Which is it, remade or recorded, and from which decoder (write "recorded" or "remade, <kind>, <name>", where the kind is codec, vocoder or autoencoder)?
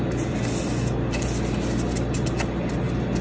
recorded